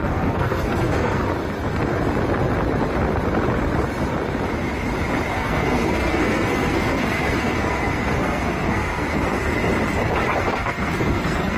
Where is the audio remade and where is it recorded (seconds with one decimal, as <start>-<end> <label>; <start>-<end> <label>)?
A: 0.0-1.2 remade; 1.2-5.3 recorded; 5.3-9.6 remade; 9.6-10.4 recorded; 10.4-11.6 remade